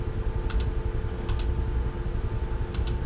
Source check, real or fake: real